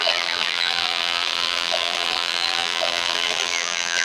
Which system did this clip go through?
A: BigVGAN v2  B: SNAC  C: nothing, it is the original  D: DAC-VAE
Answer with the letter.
A